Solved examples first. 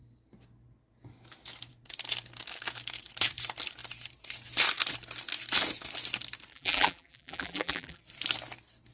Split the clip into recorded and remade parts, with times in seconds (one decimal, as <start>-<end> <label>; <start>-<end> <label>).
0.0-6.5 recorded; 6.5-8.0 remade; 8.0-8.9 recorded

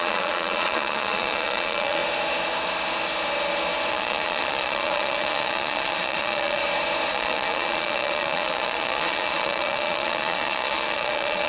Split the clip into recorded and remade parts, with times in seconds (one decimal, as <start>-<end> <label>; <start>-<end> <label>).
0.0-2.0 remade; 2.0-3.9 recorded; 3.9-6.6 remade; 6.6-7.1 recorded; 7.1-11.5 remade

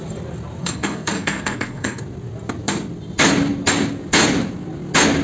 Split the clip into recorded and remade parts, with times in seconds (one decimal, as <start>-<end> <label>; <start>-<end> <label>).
0.0-0.6 recorded; 0.6-2.0 remade; 2.0-5.2 recorded